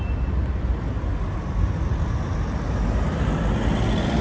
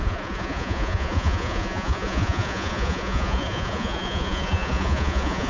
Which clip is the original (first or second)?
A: first